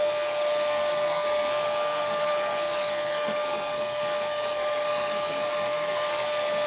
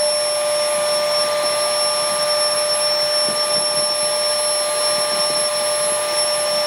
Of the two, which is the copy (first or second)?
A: first